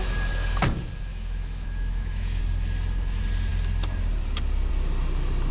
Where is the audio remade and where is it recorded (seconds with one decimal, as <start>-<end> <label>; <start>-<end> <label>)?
0.0-1.1 recorded; 1.1-2.4 remade; 2.4-5.5 recorded